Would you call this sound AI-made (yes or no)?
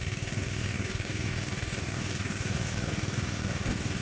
yes